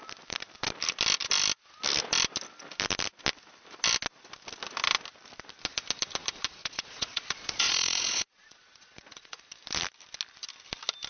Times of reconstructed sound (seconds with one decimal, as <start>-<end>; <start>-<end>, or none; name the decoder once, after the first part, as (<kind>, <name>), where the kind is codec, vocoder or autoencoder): 6.6-9.4 (vocoder, Vocos)